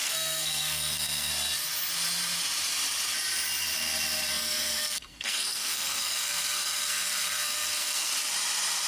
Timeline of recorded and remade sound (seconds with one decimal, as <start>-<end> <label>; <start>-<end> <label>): 0.0-1.3 remade; 1.3-4.3 recorded; 4.3-8.1 remade; 8.1-8.9 recorded